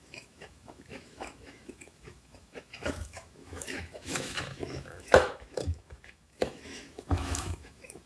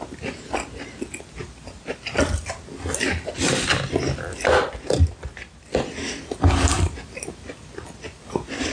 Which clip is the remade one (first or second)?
first